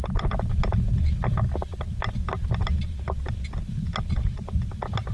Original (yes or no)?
yes